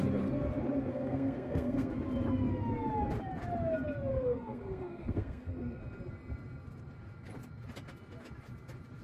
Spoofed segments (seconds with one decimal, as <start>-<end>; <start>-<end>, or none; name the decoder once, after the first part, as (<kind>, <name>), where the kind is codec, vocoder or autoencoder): 0.9-2.0 (codec, SNAC); 4.1-5.8

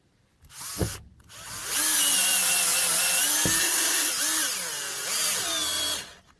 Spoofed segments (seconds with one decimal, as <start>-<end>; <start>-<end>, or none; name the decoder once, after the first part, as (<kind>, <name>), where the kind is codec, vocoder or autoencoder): 3.6-4.1 (codec, SNAC)

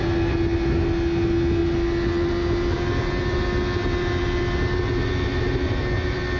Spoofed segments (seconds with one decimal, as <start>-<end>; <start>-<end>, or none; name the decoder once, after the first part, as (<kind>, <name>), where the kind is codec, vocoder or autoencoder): none

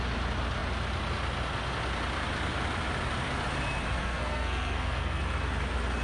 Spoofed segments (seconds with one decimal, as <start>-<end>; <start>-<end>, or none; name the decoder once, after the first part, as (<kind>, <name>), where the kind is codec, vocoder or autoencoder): 3.9-5.2 (codec, SNAC)

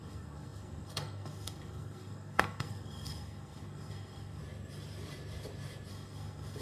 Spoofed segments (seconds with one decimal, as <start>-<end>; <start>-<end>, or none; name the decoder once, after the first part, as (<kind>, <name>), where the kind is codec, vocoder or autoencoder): 0.0-4.4 (codec, SNAC); 5.9-6.6